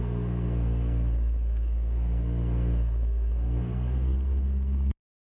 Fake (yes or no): yes